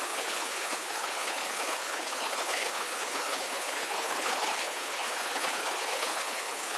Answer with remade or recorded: remade